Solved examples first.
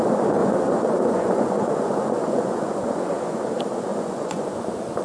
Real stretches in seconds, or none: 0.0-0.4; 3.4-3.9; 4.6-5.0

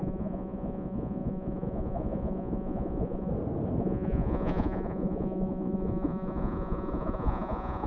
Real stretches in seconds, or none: 3.3-3.8

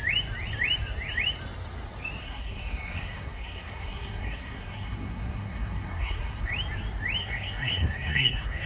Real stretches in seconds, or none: 0.0-2.2; 6.5-7.2

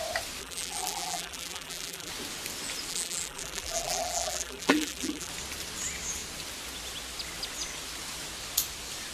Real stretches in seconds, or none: 0.0-0.4; 2.1-2.9; 5.3-9.1

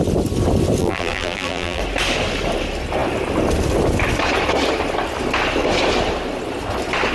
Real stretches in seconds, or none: 0.0-0.8; 1.8-7.1

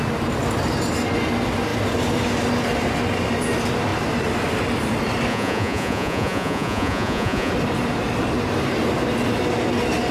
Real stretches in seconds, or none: 0.0-5.3; 7.5-10.1